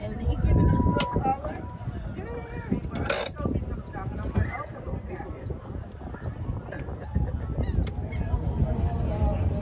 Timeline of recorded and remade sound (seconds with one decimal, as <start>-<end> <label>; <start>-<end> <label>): 0.0-9.6 recorded